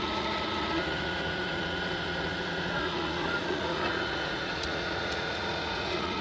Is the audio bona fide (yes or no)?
no